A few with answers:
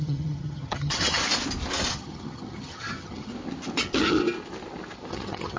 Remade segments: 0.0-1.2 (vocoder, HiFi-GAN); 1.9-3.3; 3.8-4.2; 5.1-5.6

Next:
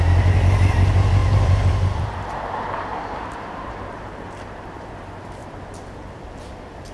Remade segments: 1.2-4.9 (vocoder, BigVGAN v2); 5.4-6.2